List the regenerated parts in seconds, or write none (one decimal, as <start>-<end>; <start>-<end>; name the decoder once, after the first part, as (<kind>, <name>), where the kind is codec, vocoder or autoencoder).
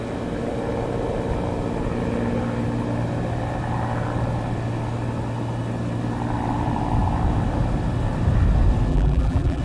8.9-9.6 (vocoder, BigVGAN v2)